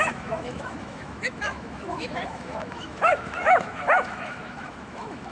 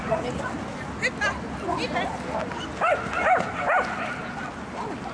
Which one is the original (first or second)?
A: second